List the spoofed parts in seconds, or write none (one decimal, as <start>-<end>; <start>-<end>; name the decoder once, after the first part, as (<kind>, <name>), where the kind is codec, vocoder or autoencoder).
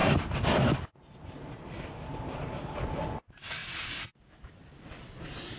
none